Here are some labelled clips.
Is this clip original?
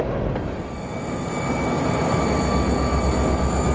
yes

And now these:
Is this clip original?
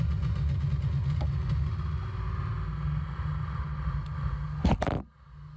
yes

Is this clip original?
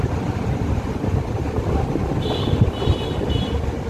yes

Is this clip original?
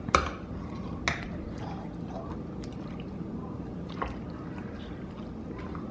yes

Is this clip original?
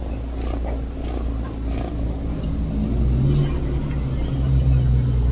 yes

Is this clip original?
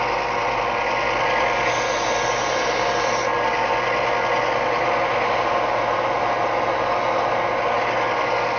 yes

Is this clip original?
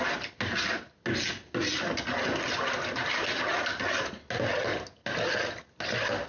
yes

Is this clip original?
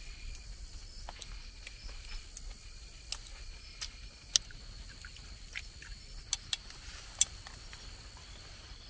yes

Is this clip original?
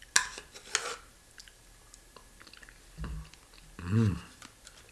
yes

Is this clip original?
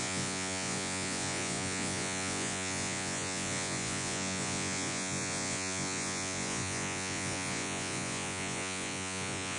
no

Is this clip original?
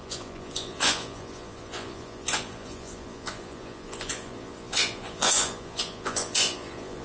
no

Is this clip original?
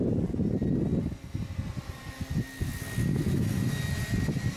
yes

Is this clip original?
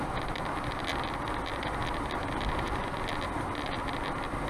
yes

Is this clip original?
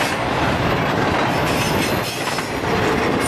yes